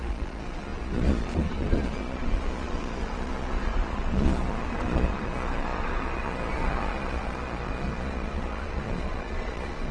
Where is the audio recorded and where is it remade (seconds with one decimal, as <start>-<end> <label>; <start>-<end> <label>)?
0.0-9.9 remade